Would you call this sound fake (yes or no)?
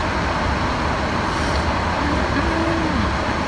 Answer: no